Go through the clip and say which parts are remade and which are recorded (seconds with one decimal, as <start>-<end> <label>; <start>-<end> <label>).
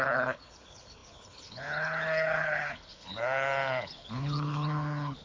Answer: 0.0-5.2 remade